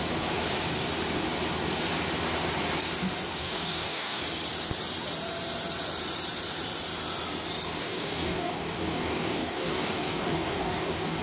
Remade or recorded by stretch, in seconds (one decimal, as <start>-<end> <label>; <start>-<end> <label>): 0.0-3.4 recorded; 3.4-4.2 remade; 4.2-7.8 recorded; 7.8-11.2 remade